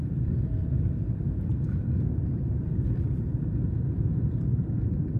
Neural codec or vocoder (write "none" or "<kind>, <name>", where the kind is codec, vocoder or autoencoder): vocoder, BigVGAN v2